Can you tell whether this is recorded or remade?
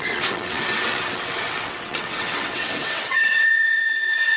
remade